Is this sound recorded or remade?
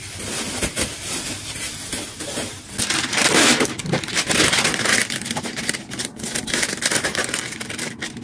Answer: recorded